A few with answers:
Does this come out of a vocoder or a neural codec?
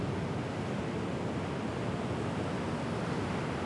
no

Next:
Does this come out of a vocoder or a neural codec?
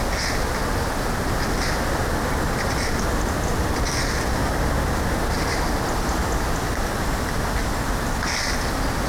no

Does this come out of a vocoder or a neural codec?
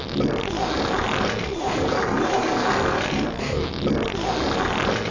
no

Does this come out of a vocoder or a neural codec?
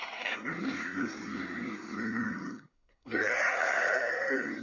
yes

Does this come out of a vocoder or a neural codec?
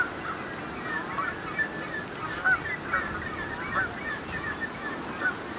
no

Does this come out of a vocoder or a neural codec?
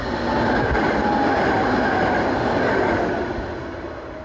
no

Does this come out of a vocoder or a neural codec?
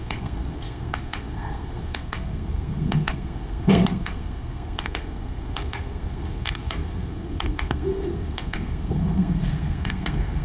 yes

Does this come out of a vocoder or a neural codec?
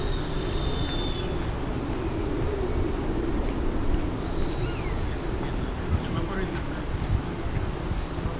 no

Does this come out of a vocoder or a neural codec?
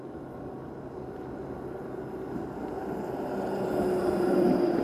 no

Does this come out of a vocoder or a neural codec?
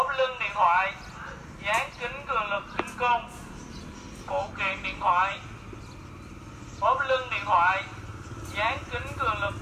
no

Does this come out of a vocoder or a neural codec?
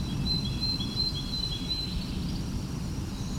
no